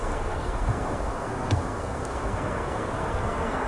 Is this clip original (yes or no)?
no